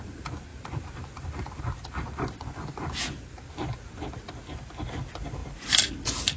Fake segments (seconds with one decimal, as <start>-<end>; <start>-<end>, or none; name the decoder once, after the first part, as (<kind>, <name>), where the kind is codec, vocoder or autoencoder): none